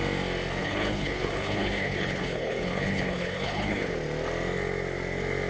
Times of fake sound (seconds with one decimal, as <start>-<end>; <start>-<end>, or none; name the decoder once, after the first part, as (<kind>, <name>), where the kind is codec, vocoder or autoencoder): 0.6-3.9 (codec, HILCodec)